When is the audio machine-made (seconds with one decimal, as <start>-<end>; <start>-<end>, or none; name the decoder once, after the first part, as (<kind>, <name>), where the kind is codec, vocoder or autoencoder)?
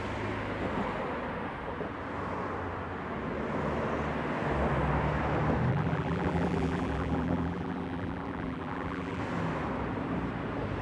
5.7-9.2 (vocoder, BigVGAN v2)